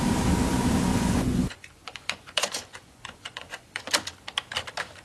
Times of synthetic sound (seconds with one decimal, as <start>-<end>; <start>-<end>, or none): 0.9-3.9